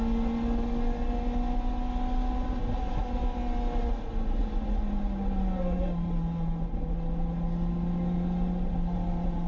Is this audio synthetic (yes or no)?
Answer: no